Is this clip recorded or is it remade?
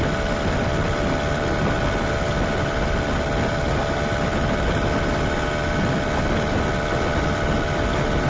recorded